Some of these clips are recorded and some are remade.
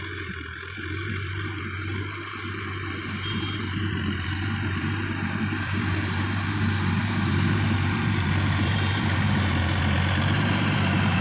remade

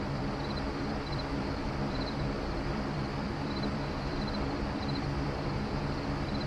remade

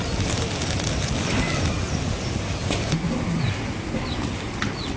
recorded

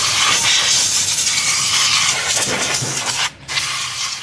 recorded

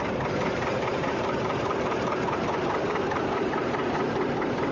remade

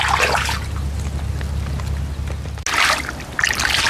recorded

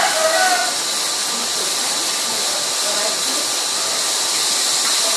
recorded